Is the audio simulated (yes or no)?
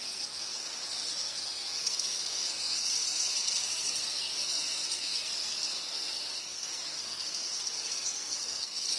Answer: yes